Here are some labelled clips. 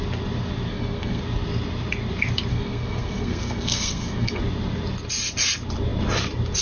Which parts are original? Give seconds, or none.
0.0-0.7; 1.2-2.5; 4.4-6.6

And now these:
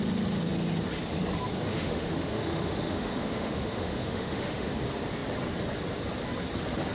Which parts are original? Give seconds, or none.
0.0-1.7; 4.7-6.9

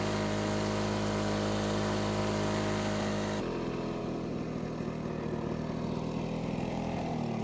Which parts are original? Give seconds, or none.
0.0-7.4

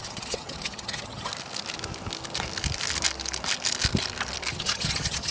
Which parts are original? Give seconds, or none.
1.3-4.5